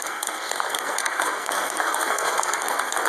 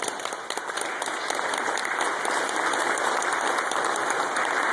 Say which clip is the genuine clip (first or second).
second